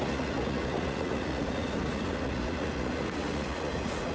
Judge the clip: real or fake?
fake